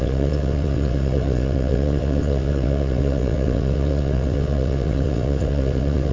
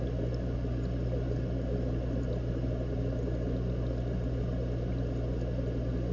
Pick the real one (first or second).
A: second